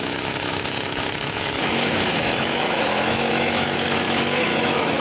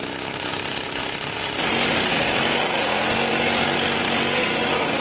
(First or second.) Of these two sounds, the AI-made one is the first